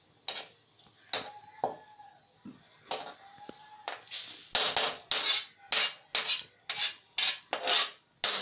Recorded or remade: recorded